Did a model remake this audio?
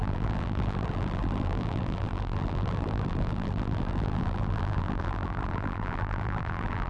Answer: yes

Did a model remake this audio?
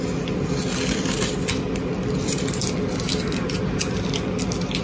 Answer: no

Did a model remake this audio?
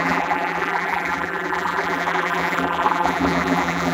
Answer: yes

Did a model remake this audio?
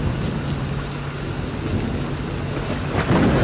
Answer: no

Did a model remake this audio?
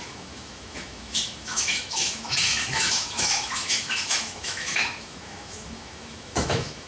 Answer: yes